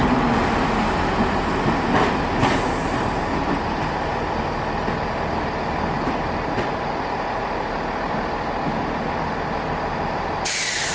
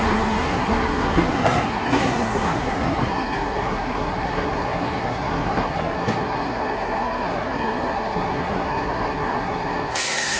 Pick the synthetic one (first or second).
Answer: second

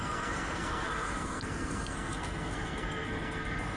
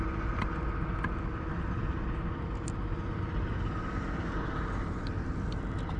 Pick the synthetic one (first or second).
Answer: first